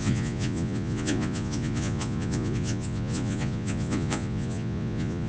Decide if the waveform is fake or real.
fake